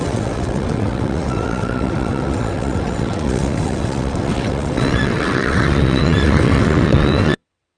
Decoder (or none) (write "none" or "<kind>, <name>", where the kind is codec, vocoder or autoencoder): vocoder, WaveNeXt